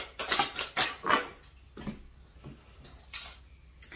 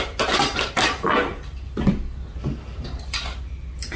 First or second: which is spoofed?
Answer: second